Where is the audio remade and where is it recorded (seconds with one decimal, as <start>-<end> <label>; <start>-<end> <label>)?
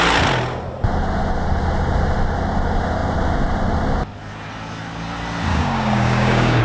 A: 0.0-5.5 recorded; 5.5-6.6 remade